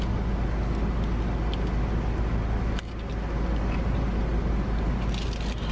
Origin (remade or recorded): recorded